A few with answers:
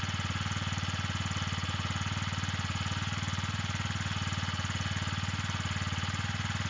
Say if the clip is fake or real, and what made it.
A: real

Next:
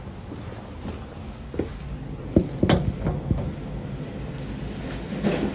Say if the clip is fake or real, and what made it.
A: real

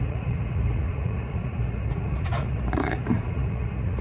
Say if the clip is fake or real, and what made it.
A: fake, vocoder, Vocos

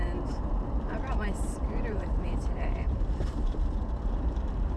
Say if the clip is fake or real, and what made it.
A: fake, vocoder, BigVGAN v2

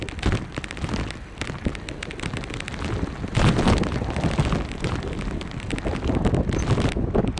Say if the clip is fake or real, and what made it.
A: real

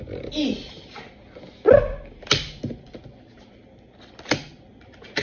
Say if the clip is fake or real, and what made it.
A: real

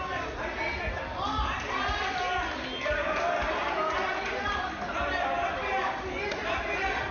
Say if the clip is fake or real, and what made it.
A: real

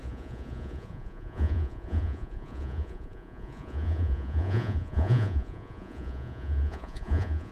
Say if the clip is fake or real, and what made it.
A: fake, vocoder, Vocos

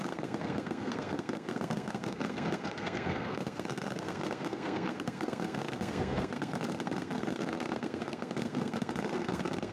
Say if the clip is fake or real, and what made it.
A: fake, codec, SNAC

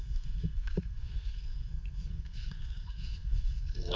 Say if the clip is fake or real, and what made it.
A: fake, codec, SNAC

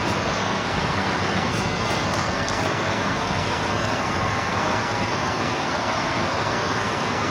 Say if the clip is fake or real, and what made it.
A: fake, codec, SNAC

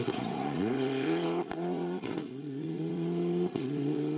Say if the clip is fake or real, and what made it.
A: fake, vocoder, Vocos